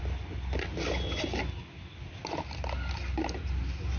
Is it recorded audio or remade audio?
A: recorded